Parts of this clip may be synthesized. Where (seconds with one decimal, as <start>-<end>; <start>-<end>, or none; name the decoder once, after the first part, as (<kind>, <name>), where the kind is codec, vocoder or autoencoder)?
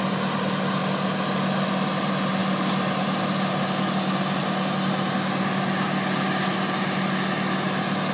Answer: none